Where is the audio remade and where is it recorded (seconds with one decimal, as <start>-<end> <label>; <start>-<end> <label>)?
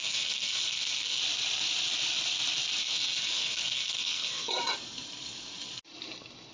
0.0-1.2 remade; 1.2-2.8 recorded; 2.8-4.5 remade; 4.5-6.5 recorded